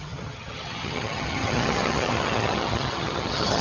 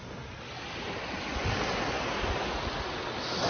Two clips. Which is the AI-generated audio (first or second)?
first